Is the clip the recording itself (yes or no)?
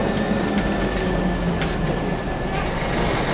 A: yes